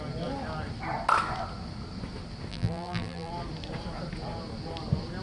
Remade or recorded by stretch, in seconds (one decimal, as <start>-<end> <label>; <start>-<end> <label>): 0.0-2.5 recorded; 2.5-3.3 remade; 3.3-5.2 recorded